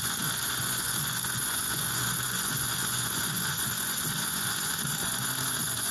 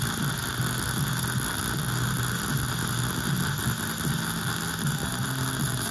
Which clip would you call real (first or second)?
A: second